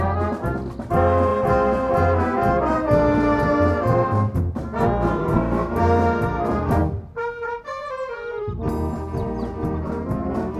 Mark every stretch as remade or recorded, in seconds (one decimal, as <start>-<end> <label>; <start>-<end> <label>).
0.0-5.2 recorded; 5.2-5.8 remade; 5.8-10.6 recorded